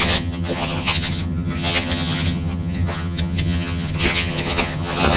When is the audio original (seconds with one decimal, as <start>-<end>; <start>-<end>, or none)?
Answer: none